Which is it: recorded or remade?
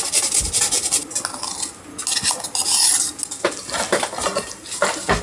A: recorded